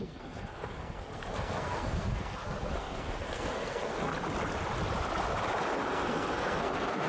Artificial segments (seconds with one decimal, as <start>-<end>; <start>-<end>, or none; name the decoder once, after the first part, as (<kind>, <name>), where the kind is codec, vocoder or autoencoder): 0.0-4.1 (codec, SNAC); 5.9-7.1